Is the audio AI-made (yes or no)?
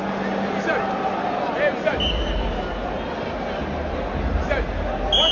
no